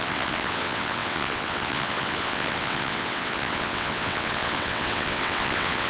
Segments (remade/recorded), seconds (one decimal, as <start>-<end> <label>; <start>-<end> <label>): 0.0-5.9 remade